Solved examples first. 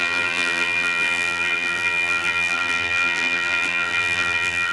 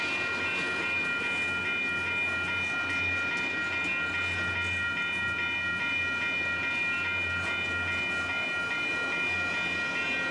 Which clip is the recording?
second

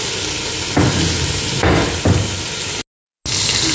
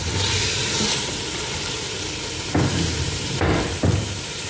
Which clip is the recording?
first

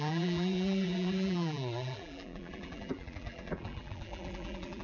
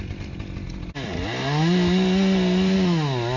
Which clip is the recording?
second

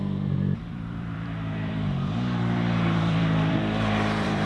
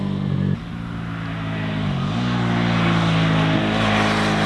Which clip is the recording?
second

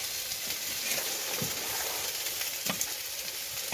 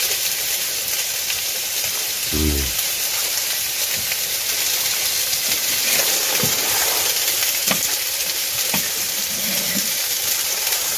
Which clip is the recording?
first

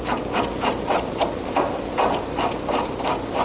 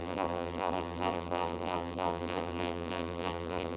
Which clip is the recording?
first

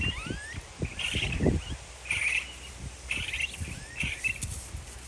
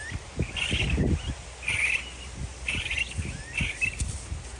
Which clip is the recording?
second